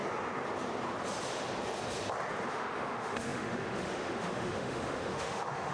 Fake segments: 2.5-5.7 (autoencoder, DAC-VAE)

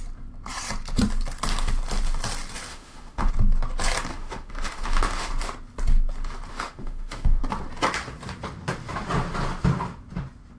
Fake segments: 2.7-3.3 (autoencoder, DAC-VAE); 4.1-5.3; 6.5-7.4

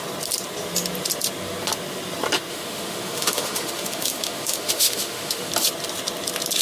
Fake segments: 2.5-5.5 (autoencoder, DAC-VAE)

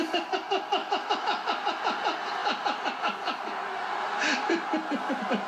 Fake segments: 0.8-1.5 (autoencoder, DAC-VAE)

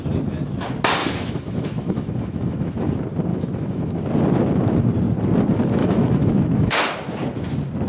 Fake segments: 1.0-2.9 (autoencoder, DAC-VAE); 3.3-4.0; 5.8-6.8

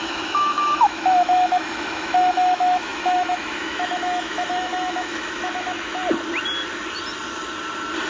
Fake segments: 0.0-6.0 (autoencoder, DAC-VAE)